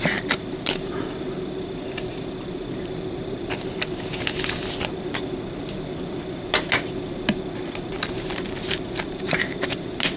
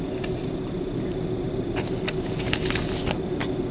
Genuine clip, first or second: second